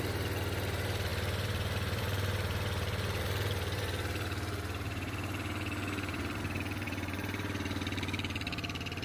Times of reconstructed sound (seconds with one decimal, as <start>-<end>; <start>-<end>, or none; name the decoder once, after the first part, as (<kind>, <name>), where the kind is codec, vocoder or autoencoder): 0.0-9.0 (vocoder, BigVGAN v2)